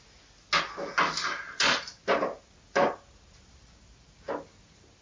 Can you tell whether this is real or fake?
real